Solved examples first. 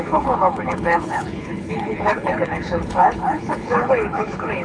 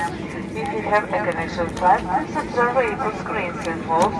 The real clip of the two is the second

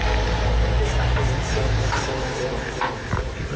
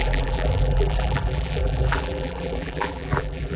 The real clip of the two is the first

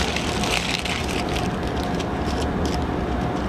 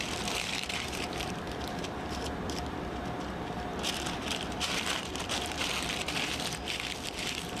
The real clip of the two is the first